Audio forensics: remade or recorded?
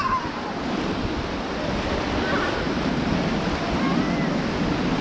recorded